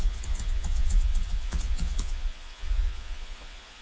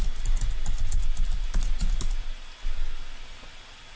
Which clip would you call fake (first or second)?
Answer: first